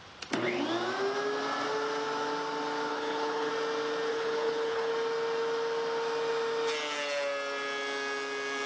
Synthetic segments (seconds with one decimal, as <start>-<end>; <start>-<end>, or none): 2.9-3.5; 4.1-4.9